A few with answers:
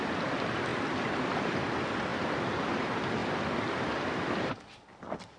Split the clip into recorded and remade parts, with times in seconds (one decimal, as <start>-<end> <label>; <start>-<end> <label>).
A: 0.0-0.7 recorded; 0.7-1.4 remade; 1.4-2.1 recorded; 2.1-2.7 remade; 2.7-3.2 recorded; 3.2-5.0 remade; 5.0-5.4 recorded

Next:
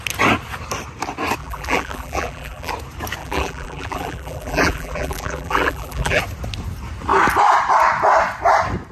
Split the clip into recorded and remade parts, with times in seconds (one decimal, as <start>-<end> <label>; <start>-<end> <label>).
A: 0.0-1.4 recorded; 1.4-2.7 remade; 2.7-3.2 recorded; 3.2-6.2 remade; 6.2-8.9 recorded

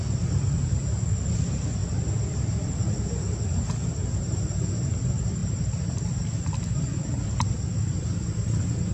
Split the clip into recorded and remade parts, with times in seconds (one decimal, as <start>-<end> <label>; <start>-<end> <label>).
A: 0.0-8.9 recorded

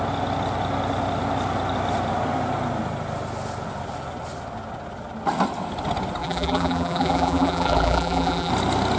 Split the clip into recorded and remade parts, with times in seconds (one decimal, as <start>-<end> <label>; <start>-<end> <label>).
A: 0.0-6.2 recorded; 6.2-8.5 remade; 8.5-9.0 recorded

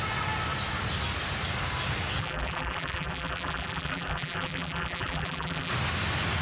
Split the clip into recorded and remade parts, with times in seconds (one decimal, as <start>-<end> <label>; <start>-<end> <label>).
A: 0.0-2.2 recorded; 2.2-5.7 remade; 5.7-6.4 recorded

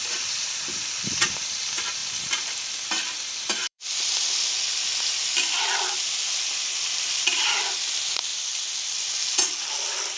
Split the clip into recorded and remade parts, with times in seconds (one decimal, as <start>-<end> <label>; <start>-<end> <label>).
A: 0.0-8.3 remade; 8.3-9.5 recorded; 9.5-10.2 remade